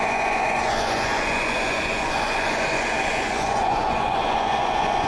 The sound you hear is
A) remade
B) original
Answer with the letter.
A